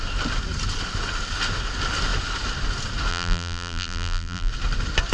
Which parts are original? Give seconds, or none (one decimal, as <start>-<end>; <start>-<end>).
0.0-3.1; 4.5-5.1